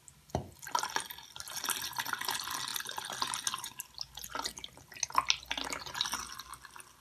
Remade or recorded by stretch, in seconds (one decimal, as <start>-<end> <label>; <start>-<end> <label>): 0.0-7.0 recorded